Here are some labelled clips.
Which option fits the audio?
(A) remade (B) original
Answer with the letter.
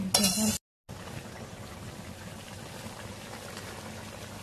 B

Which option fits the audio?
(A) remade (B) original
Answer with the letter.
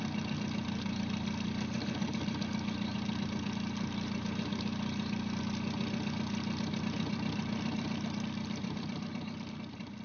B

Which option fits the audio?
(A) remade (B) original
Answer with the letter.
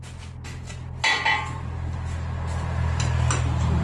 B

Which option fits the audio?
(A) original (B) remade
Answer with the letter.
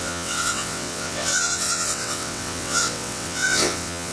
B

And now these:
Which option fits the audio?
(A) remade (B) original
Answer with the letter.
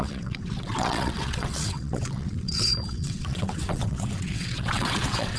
A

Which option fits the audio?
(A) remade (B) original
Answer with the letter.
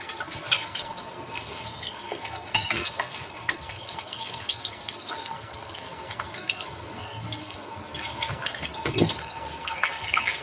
A